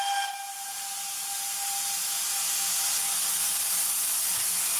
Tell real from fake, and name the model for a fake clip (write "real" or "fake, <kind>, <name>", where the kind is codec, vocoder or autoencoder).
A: real